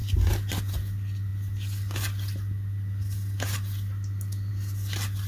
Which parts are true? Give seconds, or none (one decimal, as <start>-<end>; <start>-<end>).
0.0-5.3